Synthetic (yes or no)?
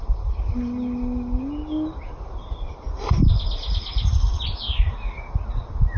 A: no